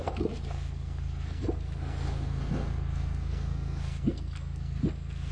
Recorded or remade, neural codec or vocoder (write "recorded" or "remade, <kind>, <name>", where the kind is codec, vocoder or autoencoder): remade, codec, SNAC